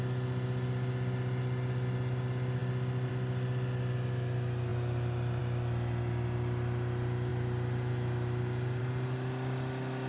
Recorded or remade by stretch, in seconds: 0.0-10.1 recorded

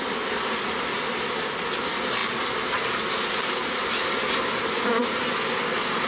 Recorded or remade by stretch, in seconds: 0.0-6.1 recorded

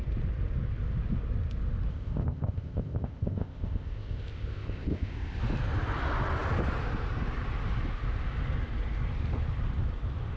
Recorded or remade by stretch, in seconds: 0.0-1.9 recorded; 1.9-5.4 remade; 5.4-10.4 recorded

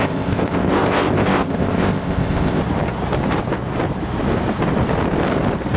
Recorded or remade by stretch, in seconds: 0.0-2.6 remade; 2.6-5.8 recorded